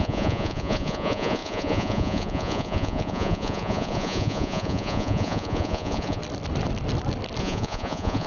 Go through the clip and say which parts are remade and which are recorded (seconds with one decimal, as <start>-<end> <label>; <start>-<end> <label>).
0.0-6.2 remade; 6.2-7.4 recorded; 7.4-8.3 remade